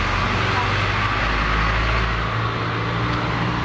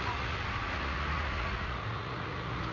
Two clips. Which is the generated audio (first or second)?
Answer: second